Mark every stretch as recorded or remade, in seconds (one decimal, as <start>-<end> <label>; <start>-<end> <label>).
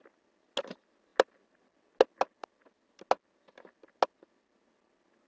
0.0-5.3 recorded